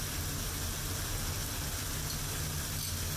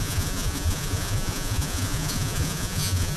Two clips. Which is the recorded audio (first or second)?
first